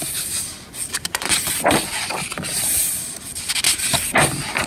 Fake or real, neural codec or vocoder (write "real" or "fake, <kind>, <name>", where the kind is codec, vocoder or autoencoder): real